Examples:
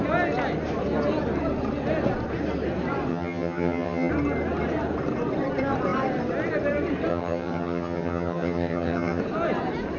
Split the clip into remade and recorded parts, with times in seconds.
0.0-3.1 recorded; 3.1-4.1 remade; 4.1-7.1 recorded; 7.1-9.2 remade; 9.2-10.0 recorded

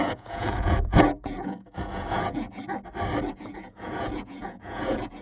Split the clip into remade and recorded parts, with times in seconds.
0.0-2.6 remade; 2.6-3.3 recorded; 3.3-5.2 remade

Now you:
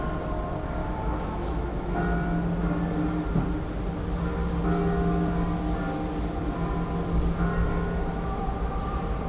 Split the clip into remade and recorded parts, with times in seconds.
0.0-0.8 recorded; 0.8-2.0 remade; 2.0-9.3 recorded

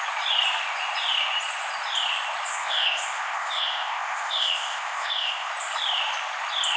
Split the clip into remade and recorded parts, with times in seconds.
0.0-2.5 recorded; 2.5-5.5 remade; 5.5-6.8 recorded